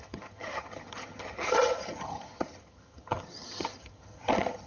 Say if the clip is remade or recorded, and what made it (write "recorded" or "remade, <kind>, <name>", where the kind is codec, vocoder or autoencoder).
remade, vocoder, HiFi-GAN